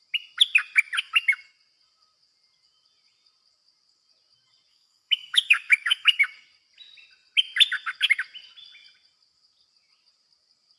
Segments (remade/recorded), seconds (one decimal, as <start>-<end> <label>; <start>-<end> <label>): 0.0-4.7 recorded; 4.7-6.2 remade; 6.2-10.8 recorded